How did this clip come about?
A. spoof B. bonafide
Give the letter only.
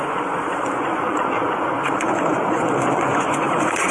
A